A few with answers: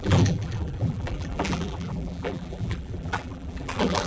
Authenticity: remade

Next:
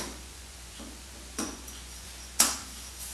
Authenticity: remade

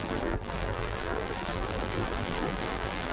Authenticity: remade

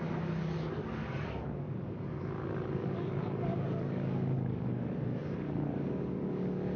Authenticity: remade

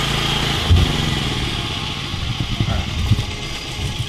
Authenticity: recorded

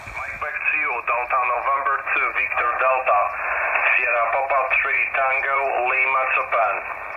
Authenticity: remade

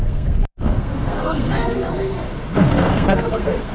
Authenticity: remade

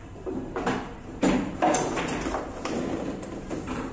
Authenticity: remade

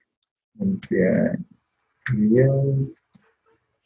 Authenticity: recorded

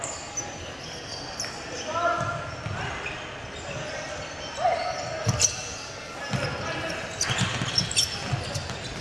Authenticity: recorded